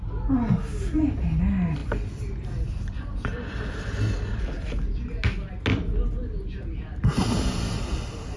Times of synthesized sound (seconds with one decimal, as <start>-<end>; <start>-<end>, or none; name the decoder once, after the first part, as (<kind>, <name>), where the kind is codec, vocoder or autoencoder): none